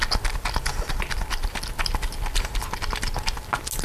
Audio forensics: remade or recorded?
recorded